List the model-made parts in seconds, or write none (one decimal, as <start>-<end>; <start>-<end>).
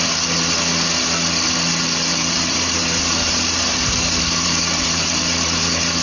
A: 2.1-5.6